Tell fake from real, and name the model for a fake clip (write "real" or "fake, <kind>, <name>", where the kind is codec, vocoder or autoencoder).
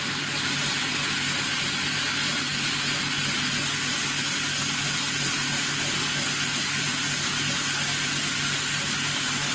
real